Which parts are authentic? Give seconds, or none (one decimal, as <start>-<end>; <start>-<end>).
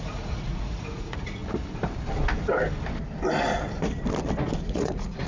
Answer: 1.4-4.6